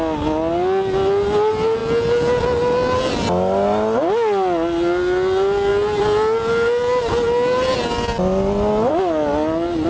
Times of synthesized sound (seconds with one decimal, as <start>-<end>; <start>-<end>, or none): none